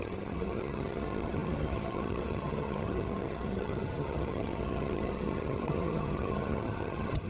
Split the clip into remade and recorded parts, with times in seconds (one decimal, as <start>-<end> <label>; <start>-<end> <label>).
0.0-7.3 remade